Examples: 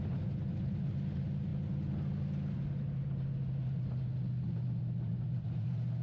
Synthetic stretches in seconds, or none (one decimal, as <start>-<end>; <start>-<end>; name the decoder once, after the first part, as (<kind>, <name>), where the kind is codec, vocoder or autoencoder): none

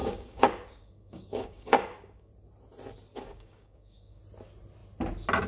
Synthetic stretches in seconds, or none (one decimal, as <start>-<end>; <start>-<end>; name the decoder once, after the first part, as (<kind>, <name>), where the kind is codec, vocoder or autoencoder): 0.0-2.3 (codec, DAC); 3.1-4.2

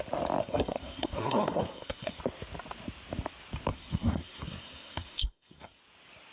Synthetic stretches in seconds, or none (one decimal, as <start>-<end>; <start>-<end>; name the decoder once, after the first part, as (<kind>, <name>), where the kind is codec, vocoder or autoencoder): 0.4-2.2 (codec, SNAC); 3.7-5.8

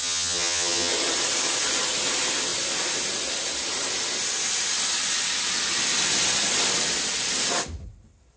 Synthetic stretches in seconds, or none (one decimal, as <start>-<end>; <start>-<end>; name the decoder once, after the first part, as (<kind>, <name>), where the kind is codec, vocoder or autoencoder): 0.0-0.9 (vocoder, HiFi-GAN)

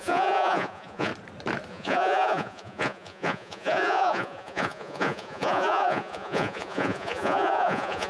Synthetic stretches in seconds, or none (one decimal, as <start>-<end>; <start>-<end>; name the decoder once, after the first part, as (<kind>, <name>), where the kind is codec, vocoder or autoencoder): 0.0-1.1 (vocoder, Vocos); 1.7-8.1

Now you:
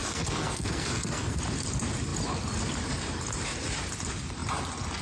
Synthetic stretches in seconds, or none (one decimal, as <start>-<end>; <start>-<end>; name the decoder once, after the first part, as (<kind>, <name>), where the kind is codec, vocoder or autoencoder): 0.0-1.4 (codec, SNAC)

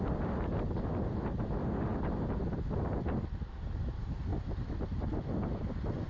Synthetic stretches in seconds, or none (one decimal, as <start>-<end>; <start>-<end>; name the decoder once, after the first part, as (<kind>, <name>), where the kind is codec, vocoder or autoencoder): none

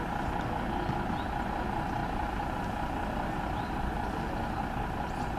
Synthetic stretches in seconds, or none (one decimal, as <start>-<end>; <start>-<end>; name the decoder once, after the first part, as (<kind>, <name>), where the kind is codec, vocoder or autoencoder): 2.0-5.4 (vocoder, BigVGAN v2)